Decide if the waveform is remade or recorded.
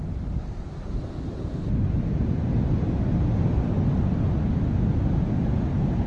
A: recorded